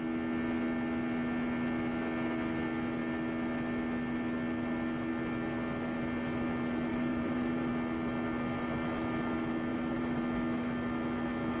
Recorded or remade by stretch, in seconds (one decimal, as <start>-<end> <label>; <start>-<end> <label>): 0.0-6.9 recorded; 6.9-7.7 remade; 7.7-9.7 recorded; 9.7-10.2 remade; 10.2-11.6 recorded